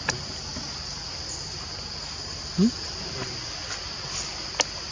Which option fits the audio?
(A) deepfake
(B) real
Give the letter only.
B